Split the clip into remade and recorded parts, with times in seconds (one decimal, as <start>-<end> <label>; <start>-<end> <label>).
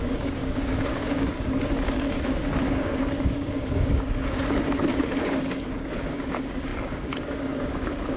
0.0-8.2 remade